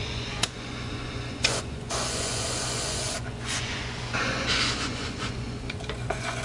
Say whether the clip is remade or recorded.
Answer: remade